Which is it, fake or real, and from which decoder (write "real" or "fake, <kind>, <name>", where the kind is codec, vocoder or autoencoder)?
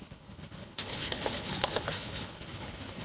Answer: fake, codec, HILCodec